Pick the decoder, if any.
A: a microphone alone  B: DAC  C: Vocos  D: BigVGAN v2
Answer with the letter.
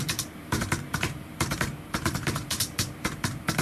D